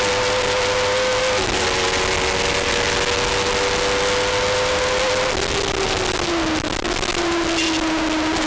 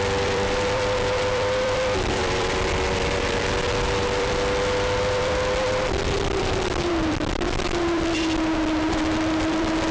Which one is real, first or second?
first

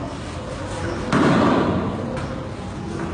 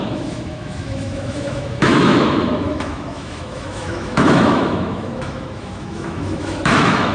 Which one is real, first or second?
first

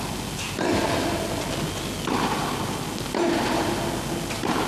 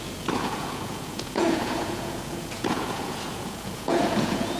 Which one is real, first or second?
first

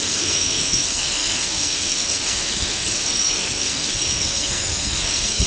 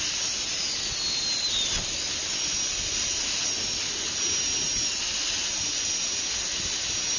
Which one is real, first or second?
second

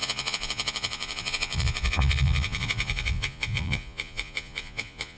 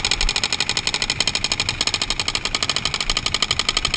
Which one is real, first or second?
second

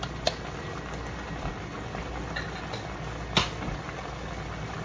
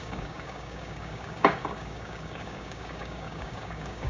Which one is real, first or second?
first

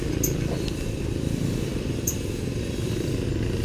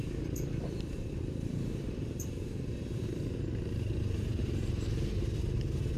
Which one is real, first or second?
first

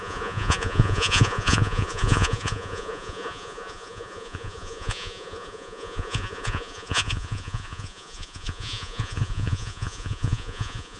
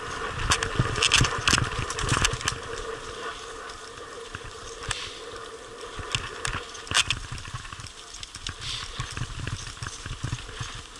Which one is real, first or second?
second